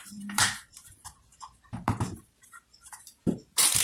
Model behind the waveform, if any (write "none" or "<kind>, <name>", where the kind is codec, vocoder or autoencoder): vocoder, BigVGAN v2